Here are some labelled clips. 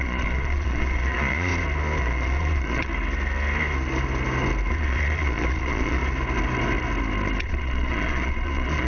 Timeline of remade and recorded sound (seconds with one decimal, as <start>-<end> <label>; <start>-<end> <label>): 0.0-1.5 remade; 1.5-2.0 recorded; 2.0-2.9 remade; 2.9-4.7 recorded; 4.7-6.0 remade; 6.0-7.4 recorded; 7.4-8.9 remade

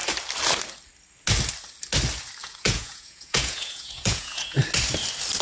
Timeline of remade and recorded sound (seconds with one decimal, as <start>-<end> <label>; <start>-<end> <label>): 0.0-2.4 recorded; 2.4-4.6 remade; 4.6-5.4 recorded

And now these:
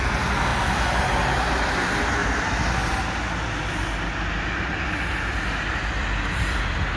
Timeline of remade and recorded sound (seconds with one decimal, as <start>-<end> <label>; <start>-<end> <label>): 0.0-7.0 recorded